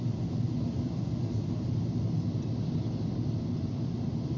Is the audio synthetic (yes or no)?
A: no